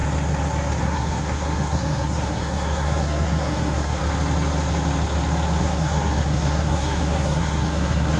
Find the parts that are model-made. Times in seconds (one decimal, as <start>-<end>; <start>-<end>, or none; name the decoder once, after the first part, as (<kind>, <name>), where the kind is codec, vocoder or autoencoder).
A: 0.8-4.0 (codec, SNAC); 5.6-8.2